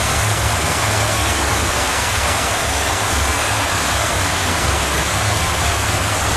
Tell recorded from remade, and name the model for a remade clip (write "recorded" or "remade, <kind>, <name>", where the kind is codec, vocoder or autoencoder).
remade, codec, SNAC